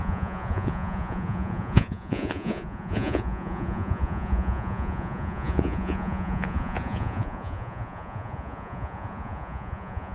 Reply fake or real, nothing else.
fake